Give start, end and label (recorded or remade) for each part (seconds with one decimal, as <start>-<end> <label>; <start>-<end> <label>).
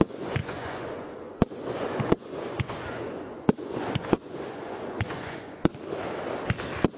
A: 0.0-5.7 remade; 5.7-7.0 recorded